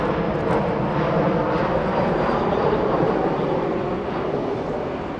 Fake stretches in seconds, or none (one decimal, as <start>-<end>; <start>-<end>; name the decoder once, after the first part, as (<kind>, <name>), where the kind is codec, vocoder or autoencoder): 1.6-3.7 (vocoder, BigVGAN v2)